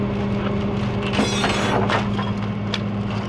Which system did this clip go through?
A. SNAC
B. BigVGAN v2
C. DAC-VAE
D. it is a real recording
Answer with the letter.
D